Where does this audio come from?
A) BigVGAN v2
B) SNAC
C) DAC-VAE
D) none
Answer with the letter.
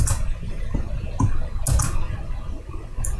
D